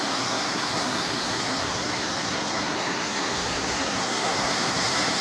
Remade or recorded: remade